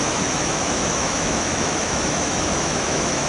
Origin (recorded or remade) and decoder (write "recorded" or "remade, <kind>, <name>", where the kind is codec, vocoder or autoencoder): remade, autoencoder, DAC-VAE